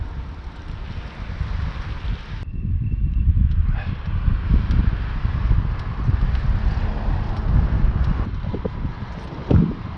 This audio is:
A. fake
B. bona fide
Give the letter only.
B